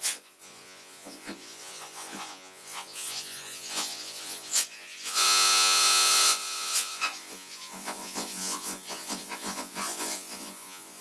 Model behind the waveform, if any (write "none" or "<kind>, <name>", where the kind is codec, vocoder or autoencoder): vocoder, Vocos